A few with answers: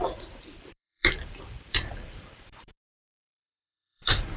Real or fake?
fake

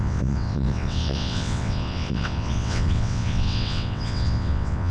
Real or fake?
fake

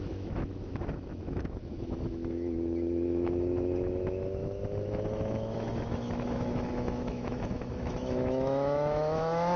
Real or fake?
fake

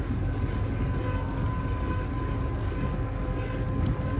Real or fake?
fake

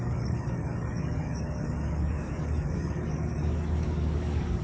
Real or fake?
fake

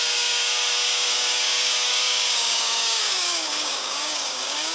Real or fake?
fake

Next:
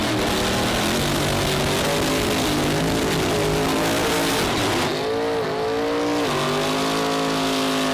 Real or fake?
real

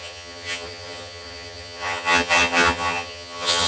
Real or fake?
fake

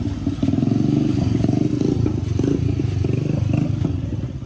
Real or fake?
real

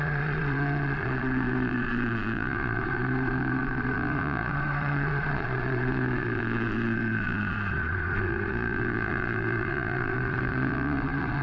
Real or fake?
fake